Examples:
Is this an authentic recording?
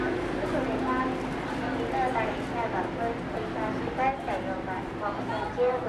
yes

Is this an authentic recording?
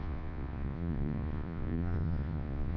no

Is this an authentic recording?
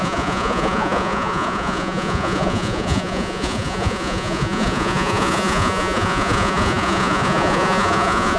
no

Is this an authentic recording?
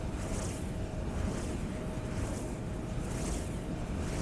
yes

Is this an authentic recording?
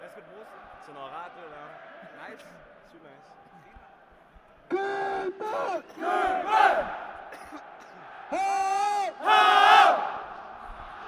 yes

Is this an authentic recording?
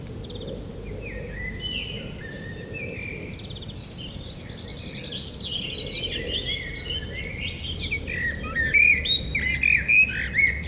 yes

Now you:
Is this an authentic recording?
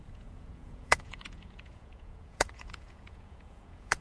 no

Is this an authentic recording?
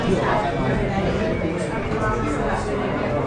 yes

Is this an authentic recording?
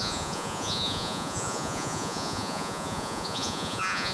no